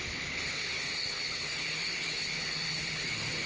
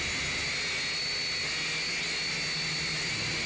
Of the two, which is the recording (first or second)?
second